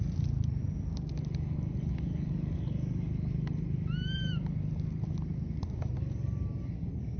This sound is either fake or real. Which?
real